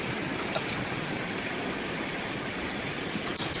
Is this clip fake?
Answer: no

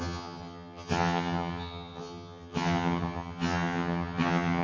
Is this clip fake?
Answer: yes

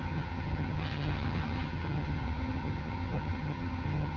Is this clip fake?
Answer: yes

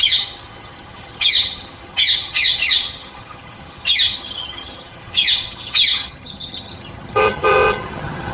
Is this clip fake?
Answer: yes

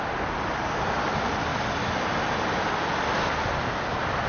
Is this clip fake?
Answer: no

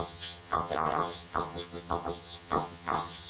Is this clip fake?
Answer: yes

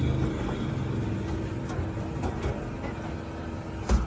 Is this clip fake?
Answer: no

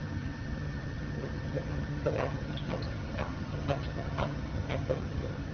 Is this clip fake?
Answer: yes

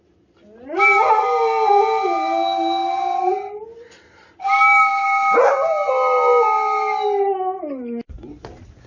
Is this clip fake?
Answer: no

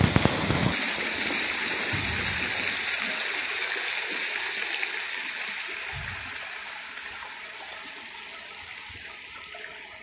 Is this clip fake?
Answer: no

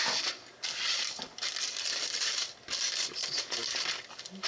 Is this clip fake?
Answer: no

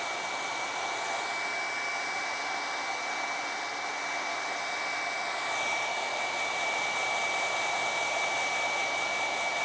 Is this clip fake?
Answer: no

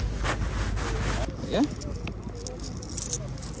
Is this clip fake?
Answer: no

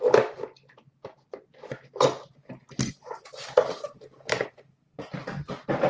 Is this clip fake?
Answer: no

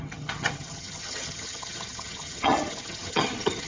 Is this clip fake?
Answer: yes